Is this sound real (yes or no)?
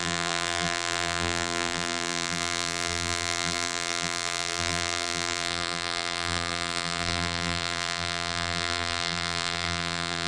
no